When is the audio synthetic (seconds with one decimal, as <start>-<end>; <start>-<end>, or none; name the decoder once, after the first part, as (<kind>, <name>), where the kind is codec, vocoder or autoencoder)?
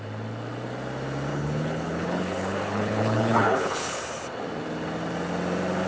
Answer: 1.3-4.0 (codec, HILCodec)